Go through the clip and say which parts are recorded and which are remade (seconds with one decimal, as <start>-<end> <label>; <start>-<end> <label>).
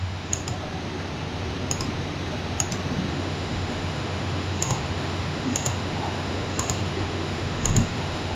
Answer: 0.0-0.4 remade; 0.4-3.1 recorded; 3.1-8.3 remade